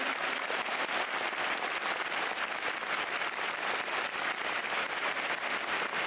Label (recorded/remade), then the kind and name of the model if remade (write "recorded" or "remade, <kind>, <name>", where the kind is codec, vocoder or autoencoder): recorded